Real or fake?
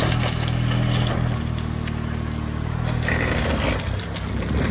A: real